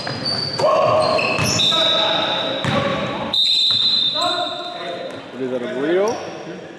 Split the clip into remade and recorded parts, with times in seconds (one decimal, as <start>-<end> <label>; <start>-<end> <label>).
0.0-2.9 recorded; 2.9-5.2 remade; 5.2-6.8 recorded